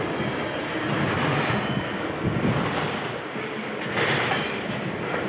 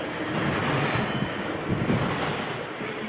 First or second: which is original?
first